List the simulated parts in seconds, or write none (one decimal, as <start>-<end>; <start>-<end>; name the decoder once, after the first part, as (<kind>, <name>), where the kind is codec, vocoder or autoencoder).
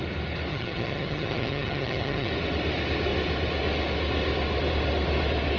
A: 0.5-2.3 (vocoder, HiFi-GAN)